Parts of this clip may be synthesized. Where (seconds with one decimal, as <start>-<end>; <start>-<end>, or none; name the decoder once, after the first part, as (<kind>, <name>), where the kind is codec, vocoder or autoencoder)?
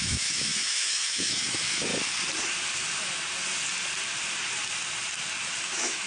0.0-1.9 (autoencoder, DAC-VAE); 5.6-6.1